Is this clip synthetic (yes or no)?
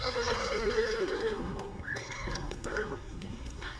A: yes